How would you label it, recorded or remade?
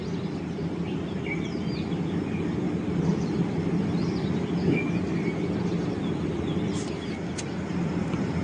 recorded